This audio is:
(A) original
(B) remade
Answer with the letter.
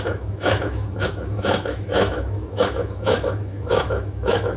B